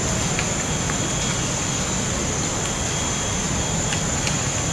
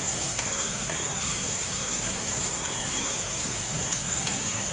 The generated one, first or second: second